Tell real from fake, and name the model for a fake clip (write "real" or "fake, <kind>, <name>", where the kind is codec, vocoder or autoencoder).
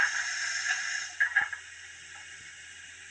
real